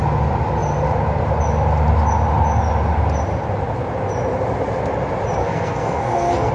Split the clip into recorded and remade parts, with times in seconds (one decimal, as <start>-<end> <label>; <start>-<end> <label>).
0.0-5.4 recorded; 5.4-6.5 remade